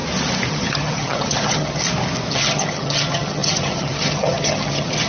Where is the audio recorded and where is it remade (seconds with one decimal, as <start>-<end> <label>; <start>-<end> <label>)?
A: 0.0-0.5 recorded; 0.5-1.8 remade; 1.8-2.3 recorded; 2.3-5.1 remade